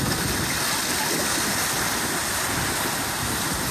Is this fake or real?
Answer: real